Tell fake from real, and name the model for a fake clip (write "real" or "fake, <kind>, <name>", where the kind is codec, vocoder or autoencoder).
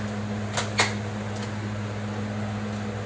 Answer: real